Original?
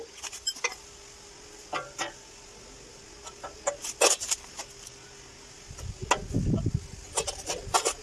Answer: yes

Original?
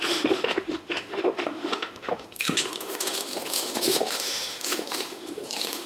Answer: no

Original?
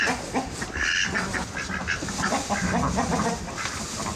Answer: yes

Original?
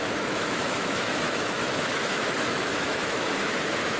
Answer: no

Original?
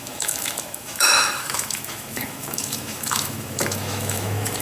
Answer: no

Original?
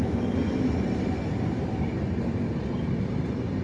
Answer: yes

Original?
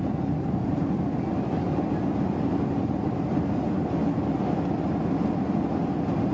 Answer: yes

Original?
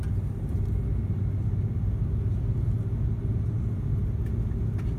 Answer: yes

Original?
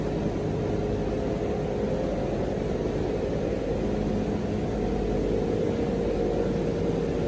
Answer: yes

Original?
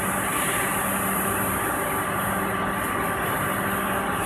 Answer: yes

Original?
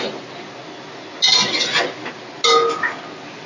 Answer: yes